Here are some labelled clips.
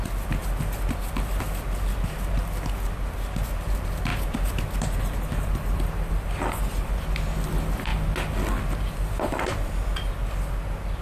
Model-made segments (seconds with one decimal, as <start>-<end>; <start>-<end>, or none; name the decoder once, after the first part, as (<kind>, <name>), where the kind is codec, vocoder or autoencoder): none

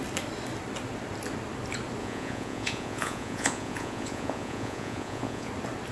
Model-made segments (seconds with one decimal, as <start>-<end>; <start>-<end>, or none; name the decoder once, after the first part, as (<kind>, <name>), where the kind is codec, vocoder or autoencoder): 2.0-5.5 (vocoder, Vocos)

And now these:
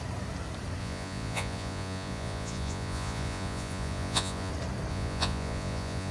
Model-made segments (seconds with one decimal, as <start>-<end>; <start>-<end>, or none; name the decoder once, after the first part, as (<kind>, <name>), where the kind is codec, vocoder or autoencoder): 0.8-4.5 (vocoder, Vocos); 4.9-6.1

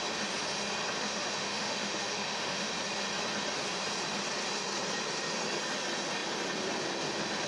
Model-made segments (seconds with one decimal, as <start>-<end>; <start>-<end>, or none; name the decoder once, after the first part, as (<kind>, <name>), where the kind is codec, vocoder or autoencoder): 1.0-2.7 (autoencoder, DAC-VAE)